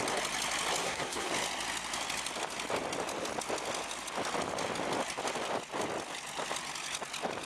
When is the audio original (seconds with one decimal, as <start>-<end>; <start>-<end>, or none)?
0.0-0.8; 1.3-7.5